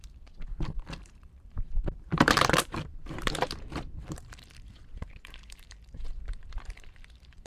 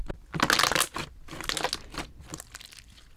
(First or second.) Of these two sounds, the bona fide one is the second